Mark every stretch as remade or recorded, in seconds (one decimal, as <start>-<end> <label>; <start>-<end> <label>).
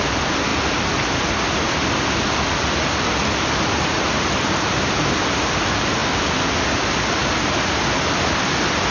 0.0-8.9 recorded